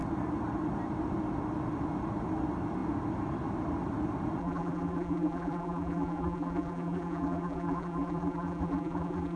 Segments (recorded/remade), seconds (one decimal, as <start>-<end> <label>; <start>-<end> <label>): 0.0-4.4 recorded; 4.4-9.4 remade